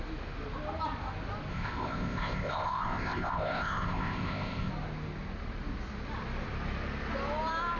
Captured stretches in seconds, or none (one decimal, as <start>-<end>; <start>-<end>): 0.0-1.5; 4.7-7.8